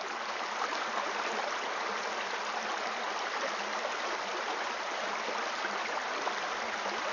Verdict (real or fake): real